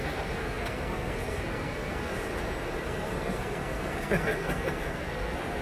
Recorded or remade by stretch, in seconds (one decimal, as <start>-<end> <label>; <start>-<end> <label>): 0.0-2.1 remade; 2.1-2.8 recorded; 2.8-5.6 remade